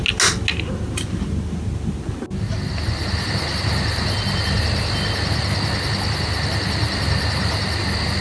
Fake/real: real